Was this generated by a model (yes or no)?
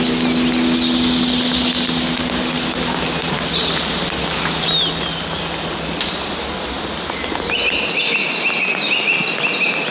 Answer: no